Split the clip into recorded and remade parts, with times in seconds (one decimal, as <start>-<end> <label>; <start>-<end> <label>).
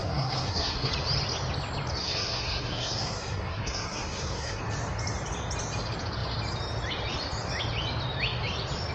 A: 0.0-0.9 remade; 0.9-2.0 recorded; 2.0-4.6 remade; 4.6-8.9 recorded